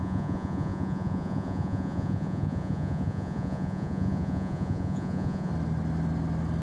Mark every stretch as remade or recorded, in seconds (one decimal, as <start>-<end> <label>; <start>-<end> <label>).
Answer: 0.0-5.5 remade; 5.5-6.6 recorded